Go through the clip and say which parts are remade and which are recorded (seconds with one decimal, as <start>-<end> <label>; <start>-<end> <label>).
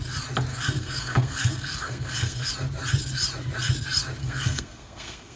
0.0-0.5 recorded; 0.5-2.5 remade; 2.5-4.2 recorded; 4.2-5.4 remade